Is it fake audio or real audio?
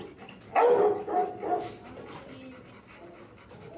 real